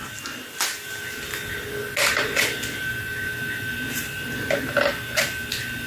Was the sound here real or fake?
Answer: real